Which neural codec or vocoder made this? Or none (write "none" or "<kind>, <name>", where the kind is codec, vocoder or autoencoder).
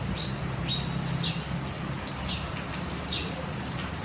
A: none